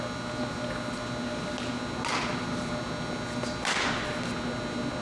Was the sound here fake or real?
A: real